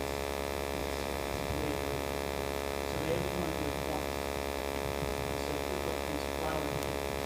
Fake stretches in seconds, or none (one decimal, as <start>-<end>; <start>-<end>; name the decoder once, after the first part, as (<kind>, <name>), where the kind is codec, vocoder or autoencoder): 0.8-1.5 (vocoder, BigVGAN v2)